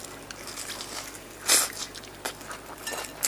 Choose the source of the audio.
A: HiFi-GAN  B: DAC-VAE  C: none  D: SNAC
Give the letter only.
C